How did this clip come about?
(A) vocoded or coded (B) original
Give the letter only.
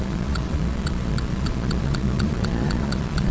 A